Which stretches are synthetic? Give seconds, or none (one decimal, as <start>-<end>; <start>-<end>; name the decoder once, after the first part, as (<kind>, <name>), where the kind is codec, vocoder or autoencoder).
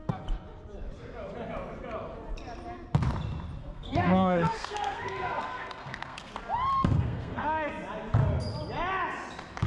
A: 3.6-6.3 (codec, SNAC); 6.7-7.7